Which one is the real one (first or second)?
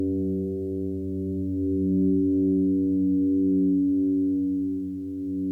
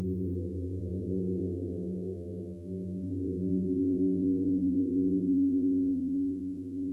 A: first